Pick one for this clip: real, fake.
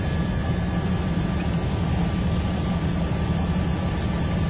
real